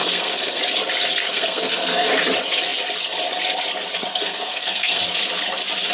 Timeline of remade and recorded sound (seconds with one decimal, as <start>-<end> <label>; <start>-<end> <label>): 0.0-0.6 remade; 0.6-1.2 recorded; 1.2-2.1 remade; 2.1-4.1 recorded; 4.1-5.0 remade; 5.0-5.9 recorded